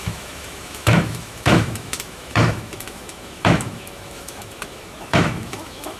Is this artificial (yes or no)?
yes